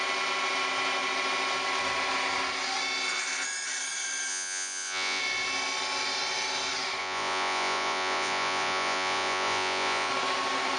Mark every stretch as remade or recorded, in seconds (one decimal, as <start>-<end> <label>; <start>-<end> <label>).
0.0-4.3 recorded; 4.3-5.2 remade; 5.2-7.0 recorded; 7.0-10.1 remade; 10.1-10.8 recorded